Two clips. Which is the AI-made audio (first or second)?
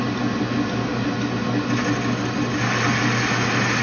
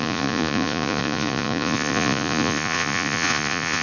second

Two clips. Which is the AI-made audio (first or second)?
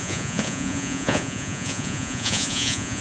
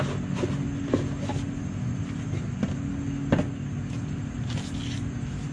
first